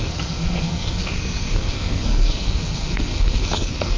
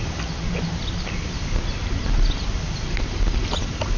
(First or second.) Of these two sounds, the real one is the second